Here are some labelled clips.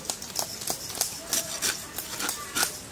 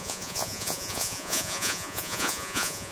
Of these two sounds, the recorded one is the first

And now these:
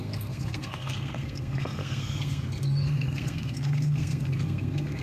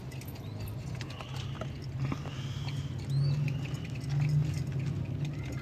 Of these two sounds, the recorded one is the second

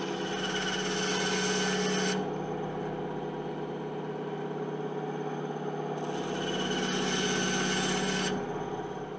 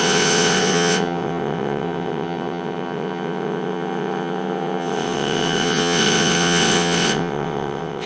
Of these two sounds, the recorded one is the first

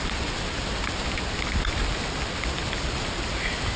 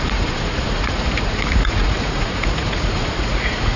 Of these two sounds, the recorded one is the first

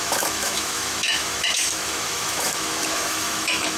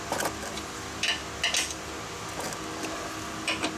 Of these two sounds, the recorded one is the second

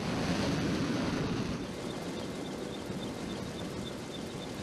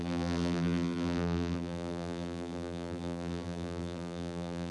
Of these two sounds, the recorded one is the first